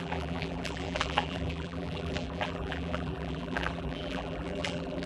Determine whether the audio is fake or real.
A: fake